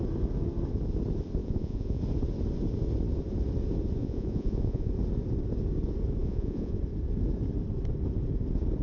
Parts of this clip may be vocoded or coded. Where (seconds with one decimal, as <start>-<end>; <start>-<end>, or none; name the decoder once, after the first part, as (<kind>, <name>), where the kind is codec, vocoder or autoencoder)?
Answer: 1.4-2.0 (vocoder, Vocos); 4.0-4.9; 6.2-6.8

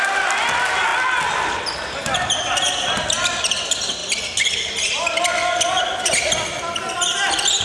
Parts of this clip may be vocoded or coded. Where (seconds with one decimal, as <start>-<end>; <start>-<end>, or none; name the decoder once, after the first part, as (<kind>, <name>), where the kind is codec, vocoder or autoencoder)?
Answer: none

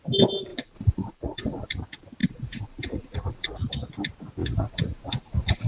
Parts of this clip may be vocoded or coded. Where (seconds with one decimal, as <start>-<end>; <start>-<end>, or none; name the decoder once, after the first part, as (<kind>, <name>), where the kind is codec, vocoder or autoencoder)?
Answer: 0.5-1.8 (vocoder, Vocos); 2.2-3.7; 4.4-5.7